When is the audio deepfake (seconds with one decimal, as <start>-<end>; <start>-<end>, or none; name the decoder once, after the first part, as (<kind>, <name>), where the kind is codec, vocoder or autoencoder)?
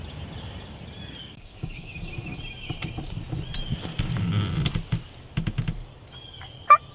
1.2-2.0 (codec, DAC)